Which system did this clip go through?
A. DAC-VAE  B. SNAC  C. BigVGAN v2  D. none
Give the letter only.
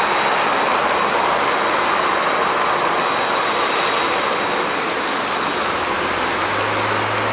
D